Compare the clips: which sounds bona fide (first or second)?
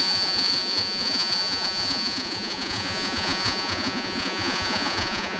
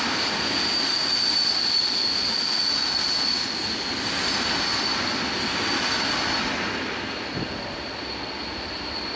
second